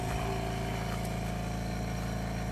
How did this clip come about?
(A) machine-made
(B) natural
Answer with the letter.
B